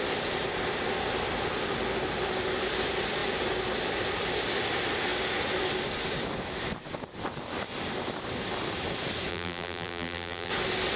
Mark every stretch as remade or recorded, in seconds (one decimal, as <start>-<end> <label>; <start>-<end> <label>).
0.0-9.3 recorded; 9.3-10.5 remade; 10.5-11.0 recorded